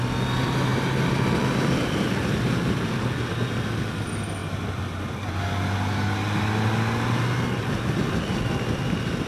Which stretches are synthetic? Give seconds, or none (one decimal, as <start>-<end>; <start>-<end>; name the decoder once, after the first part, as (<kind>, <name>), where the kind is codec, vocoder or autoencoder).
0.7-2.8 (vocoder, BigVGAN v2)